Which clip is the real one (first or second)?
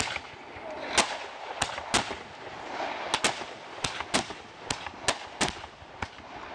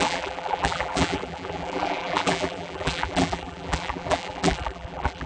first